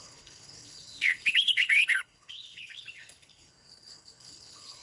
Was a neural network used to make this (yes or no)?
yes